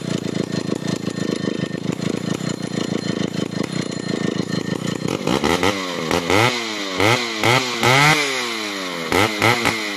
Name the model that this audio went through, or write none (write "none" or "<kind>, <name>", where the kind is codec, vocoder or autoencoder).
none